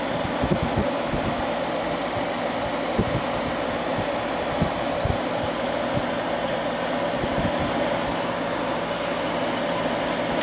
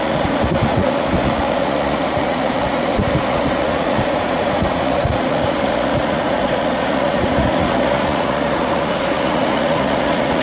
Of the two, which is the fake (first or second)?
second